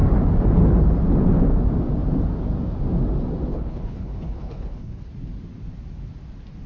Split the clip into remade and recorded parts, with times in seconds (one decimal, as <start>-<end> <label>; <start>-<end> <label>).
0.0-3.5 recorded; 3.5-5.1 remade; 5.1-6.7 recorded